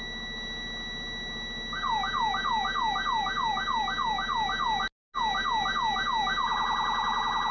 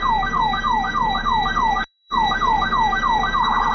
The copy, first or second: second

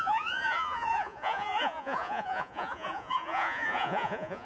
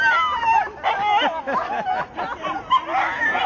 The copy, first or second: first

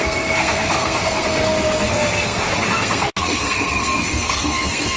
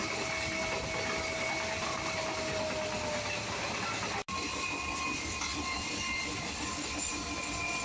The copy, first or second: first